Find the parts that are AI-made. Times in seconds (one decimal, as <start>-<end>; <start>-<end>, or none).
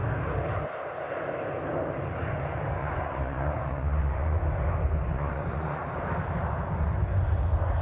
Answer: 2.8-4.4; 5.1-5.8